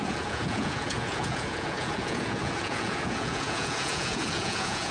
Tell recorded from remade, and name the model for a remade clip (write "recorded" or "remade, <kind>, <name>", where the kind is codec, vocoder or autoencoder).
remade, vocoder, Vocos